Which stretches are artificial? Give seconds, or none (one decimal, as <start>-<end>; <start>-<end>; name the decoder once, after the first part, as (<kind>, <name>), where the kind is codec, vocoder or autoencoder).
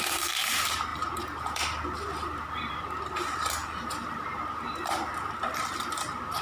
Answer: 0.0-6.4 (vocoder, BigVGAN v2)